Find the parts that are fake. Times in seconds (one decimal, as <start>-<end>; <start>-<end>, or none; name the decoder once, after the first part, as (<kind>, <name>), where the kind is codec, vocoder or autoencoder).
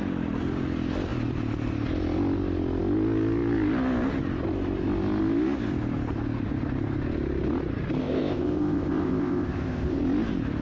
8.0-10.0 (codec, ZipCodec)